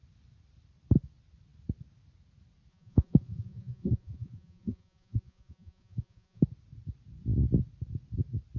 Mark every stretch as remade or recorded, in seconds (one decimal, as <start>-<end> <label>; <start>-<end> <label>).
0.0-2.7 recorded; 2.7-6.4 remade; 6.4-8.6 recorded